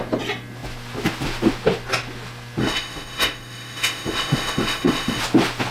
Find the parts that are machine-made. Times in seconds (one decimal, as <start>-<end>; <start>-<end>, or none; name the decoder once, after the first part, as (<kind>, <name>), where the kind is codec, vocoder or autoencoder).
2.6-5.2 (autoencoder, DAC-VAE)